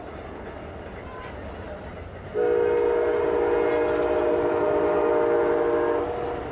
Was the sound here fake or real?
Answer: real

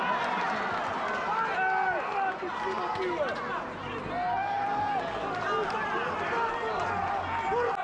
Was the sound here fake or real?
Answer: real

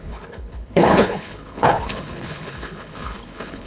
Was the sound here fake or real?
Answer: fake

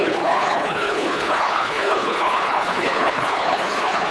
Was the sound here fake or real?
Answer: fake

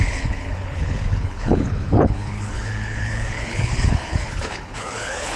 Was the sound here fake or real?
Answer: fake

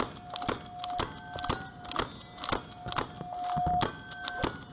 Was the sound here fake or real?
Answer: real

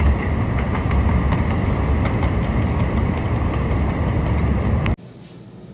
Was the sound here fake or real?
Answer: real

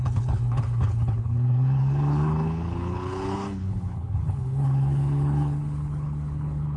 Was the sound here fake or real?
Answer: fake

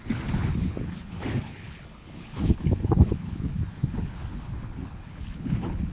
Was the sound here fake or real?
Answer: fake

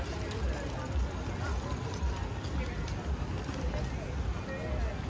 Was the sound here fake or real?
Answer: real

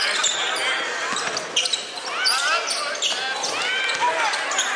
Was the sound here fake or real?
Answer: real